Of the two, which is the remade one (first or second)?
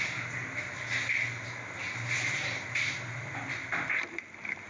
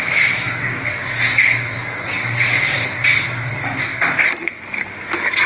second